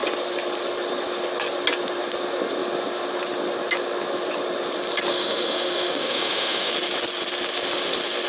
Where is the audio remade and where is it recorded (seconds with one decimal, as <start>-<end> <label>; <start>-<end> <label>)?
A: 0.0-5.1 recorded; 5.1-6.7 remade; 6.7-8.3 recorded